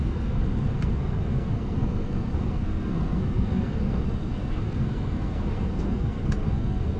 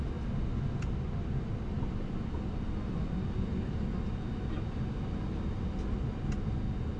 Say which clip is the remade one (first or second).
first